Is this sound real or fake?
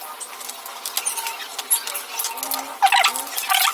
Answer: real